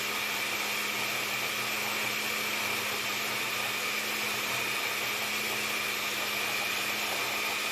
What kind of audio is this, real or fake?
real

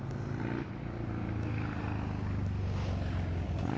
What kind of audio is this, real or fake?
real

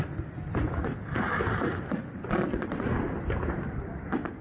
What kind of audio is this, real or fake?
real